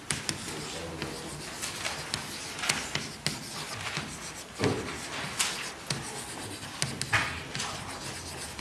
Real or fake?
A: real